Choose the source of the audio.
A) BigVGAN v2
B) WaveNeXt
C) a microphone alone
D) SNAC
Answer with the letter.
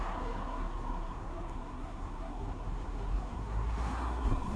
D